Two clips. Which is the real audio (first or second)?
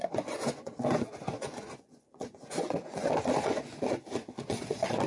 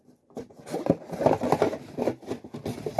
second